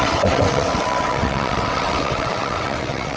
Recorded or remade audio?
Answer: remade